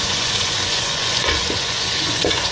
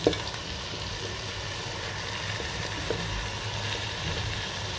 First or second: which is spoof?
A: first